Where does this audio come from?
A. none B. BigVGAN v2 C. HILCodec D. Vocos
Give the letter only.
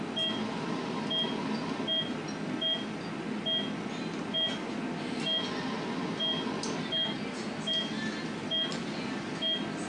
A